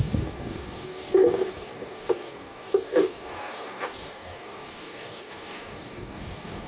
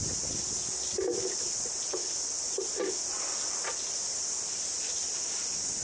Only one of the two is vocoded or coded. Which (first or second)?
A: first